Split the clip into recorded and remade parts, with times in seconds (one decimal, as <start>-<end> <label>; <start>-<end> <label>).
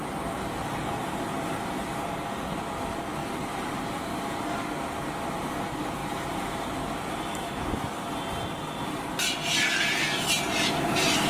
0.0-3.2 recorded; 3.2-3.8 remade; 3.8-6.0 recorded; 6.0-7.5 remade; 7.5-11.3 recorded